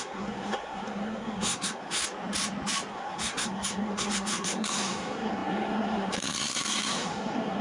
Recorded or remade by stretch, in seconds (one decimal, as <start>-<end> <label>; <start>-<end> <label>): 0.0-2.0 remade; 2.0-2.9 recorded; 2.9-7.6 remade